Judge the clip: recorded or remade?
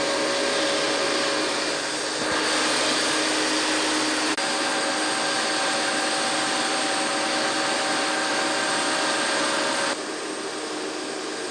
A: recorded